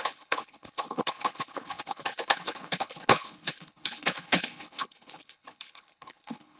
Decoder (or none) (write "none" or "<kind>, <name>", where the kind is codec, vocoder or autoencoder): codec, HILCodec